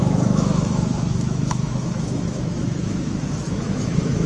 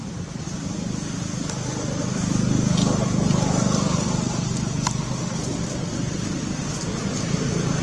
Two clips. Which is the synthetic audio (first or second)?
first